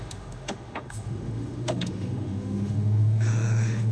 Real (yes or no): no